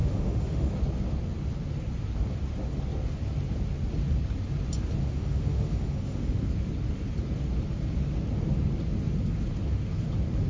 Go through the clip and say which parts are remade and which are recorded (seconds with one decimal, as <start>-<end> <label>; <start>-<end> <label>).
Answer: 0.0-0.7 remade; 0.7-5.0 recorded; 5.0-6.3 remade; 6.3-10.5 recorded